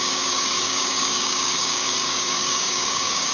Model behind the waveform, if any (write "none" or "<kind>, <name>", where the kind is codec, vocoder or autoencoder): codec, DAC